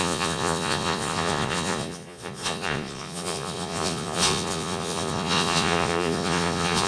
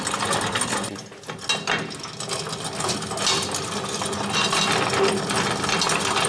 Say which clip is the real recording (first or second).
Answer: second